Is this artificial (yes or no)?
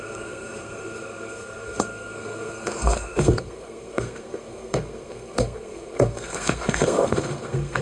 yes